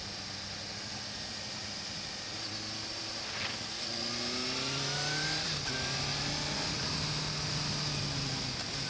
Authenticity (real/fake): real